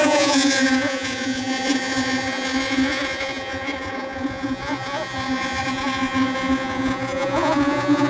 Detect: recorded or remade remade